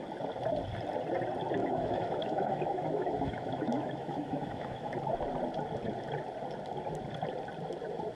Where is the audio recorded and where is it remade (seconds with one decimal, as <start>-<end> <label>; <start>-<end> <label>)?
0.0-1.6 recorded; 1.6-5.0 remade; 5.0-8.1 recorded